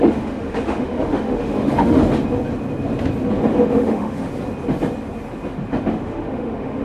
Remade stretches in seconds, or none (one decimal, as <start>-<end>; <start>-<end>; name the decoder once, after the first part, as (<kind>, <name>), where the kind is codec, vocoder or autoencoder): 0.0-2.0 (autoencoder, DAC-VAE); 3.7-4.3; 5.9-6.8